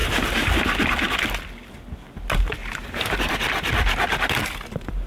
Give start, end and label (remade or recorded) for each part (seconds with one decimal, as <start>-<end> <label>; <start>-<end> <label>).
0.0-0.5 remade; 0.5-2.6 recorded; 2.6-3.3 remade; 3.3-5.1 recorded